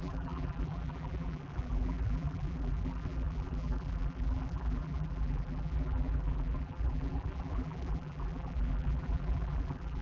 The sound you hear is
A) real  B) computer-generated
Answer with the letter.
B